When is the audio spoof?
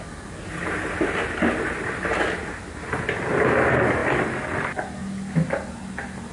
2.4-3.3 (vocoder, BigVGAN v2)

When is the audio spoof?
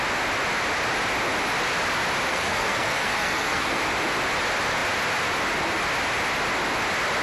2.3-3.8 (codec, SNAC)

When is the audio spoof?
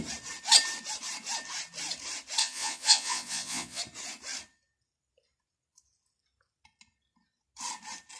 2.4-3.8 (vocoder, Vocos)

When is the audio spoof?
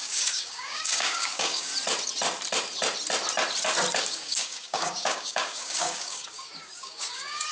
0.0-1.7 (codec, DAC); 4.0-7.5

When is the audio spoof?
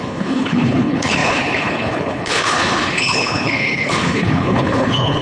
0.0-5.2 (codec, HILCodec)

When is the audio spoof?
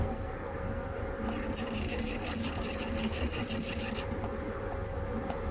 0.0-1.0 (codec, SNAC); 1.8-2.4; 3.0-3.4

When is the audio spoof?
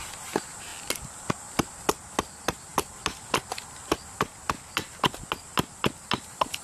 none